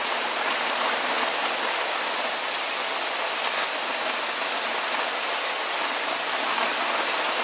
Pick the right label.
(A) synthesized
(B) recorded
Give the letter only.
B